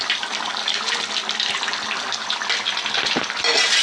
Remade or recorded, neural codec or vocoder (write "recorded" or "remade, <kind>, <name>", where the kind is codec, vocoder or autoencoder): recorded